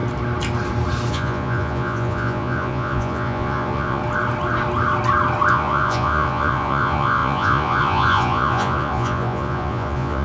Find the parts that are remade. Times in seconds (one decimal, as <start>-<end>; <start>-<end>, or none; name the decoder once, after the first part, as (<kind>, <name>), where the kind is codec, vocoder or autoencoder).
1.1-4.0 (vocoder, Vocos); 5.5-10.2